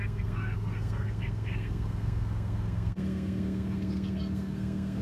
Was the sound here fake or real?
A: fake